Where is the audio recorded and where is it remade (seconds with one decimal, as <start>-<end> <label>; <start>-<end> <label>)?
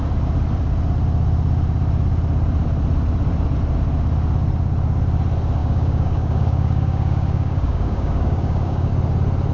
0.0-5.6 recorded; 5.6-8.9 remade; 8.9-9.5 recorded